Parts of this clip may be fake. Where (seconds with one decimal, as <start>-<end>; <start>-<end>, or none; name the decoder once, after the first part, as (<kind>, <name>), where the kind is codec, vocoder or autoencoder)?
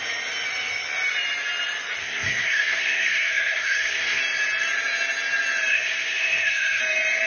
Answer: 2.0-4.2 (codec, SNAC); 5.7-6.8